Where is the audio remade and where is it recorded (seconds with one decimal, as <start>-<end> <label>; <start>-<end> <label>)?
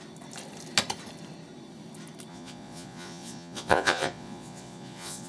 0.0-2.3 recorded; 2.3-5.3 remade